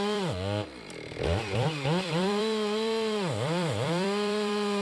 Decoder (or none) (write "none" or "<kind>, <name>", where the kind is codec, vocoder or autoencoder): vocoder, BigVGAN v2